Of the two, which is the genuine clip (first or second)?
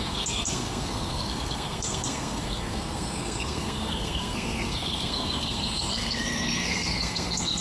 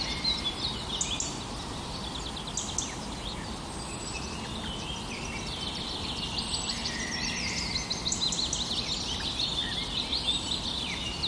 second